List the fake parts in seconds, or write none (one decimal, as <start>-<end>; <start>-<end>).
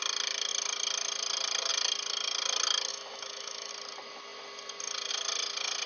2.9-3.7